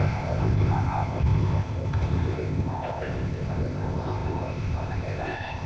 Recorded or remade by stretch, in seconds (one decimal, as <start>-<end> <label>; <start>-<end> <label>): 0.0-5.7 remade